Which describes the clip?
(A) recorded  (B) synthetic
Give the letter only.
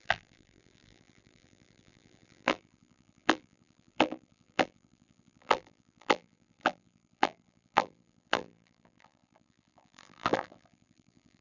B